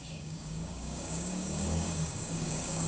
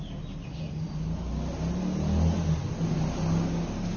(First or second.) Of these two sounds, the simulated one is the first